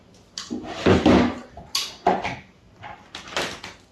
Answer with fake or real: real